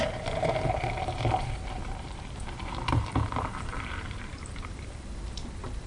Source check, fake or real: fake